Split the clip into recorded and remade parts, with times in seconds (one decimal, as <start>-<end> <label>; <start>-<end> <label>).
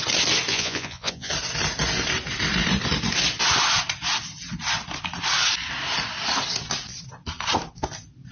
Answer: 0.0-0.5 recorded; 0.5-1.3 remade; 1.3-8.3 recorded